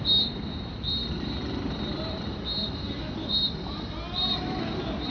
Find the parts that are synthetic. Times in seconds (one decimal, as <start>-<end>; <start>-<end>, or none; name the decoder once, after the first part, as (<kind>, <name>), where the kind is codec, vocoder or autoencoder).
none